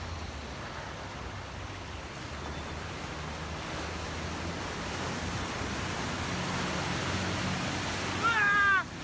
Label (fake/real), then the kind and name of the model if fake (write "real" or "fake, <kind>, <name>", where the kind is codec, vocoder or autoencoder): real